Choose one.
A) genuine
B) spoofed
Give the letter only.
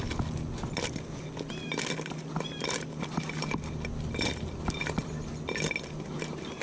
A